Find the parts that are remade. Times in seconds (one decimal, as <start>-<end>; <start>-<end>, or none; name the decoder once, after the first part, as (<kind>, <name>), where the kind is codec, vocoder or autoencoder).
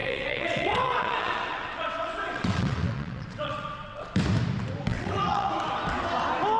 0.0-4.0 (vocoder, WaveNeXt); 4.9-5.5